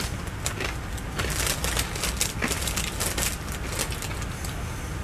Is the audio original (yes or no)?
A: yes